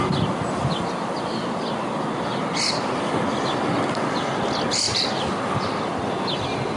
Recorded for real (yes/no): yes